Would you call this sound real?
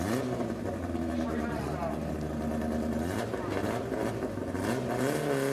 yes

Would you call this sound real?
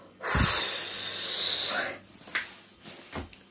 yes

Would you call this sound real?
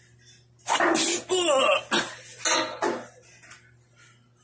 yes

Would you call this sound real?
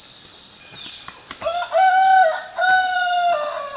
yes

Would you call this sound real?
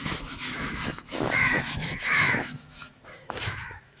no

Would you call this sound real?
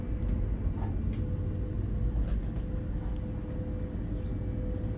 yes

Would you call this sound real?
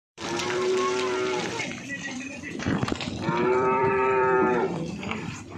no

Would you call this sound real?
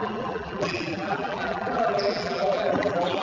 no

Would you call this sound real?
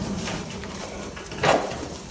no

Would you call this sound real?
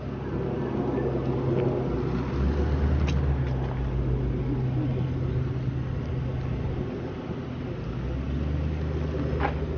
yes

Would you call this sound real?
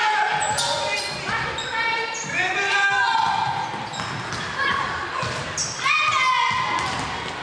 yes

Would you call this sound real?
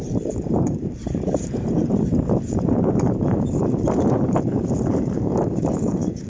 no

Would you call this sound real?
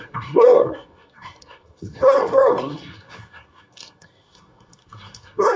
no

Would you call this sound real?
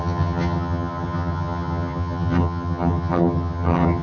no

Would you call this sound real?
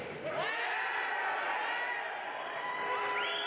yes